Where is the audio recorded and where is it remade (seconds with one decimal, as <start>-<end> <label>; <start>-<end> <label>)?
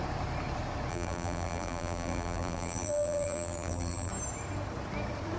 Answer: 0.0-0.9 recorded; 0.9-4.1 remade; 4.1-5.4 recorded